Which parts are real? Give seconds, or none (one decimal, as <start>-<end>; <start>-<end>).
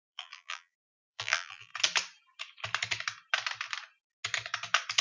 1.7-5.0